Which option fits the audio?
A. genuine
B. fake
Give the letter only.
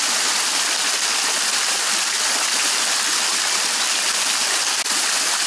A